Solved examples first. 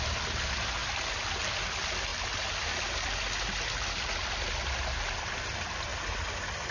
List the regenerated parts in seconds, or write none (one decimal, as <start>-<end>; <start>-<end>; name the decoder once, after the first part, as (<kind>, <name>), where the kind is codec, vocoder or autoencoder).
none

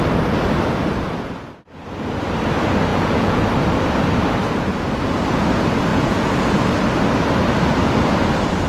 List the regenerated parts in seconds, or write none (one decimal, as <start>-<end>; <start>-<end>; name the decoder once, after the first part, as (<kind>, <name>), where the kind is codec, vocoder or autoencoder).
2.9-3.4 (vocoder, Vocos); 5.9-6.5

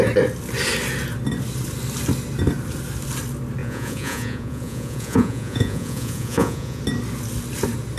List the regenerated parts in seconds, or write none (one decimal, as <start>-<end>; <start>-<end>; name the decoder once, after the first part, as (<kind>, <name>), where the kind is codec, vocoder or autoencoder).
3.6-6.8 (vocoder, Vocos)